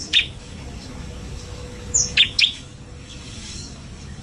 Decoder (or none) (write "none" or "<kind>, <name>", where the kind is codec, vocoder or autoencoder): codec, DAC